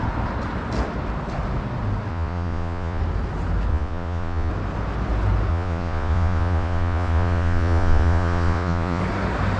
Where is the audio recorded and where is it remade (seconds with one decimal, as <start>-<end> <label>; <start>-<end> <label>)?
0.0-2.1 recorded; 2.1-3.0 remade; 3.0-3.7 recorded; 3.7-4.5 remade; 4.5-5.5 recorded; 5.5-9.0 remade; 9.0-9.6 recorded